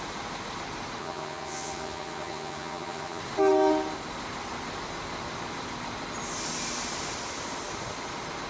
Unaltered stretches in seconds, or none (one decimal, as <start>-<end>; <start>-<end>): 0.0-1.0; 3.2-8.5